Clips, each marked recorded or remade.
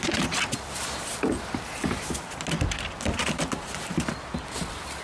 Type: recorded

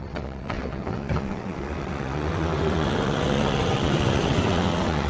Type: remade